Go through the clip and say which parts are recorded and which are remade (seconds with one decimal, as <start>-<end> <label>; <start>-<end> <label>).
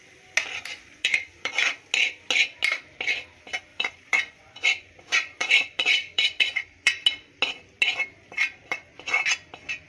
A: 0.0-0.7 recorded; 0.7-1.5 remade; 1.5-3.7 recorded; 3.7-6.9 remade; 6.9-9.9 recorded